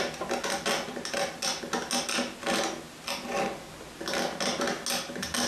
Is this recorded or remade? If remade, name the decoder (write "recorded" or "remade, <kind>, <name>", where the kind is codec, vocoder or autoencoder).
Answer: recorded